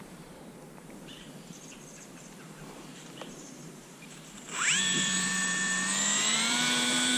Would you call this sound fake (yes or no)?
yes